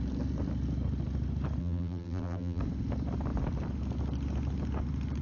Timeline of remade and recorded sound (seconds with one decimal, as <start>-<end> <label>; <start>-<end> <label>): 0.0-1.6 recorded; 1.6-2.6 remade; 2.6-5.2 recorded

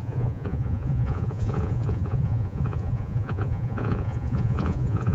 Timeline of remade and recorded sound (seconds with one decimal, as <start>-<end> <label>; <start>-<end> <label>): 0.0-5.1 remade

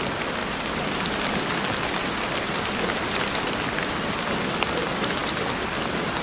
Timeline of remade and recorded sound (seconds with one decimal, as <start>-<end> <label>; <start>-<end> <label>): 0.0-0.4 recorded; 0.4-4.1 remade; 4.1-5.2 recorded; 5.2-5.8 remade; 5.8-6.2 recorded

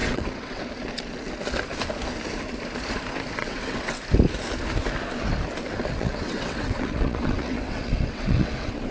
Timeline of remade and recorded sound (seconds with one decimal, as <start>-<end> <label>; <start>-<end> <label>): 0.0-0.6 remade; 0.6-3.4 recorded; 3.4-4.0 remade; 4.0-5.9 recorded; 5.9-8.9 remade